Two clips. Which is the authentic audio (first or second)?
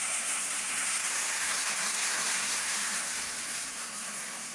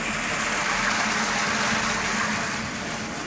second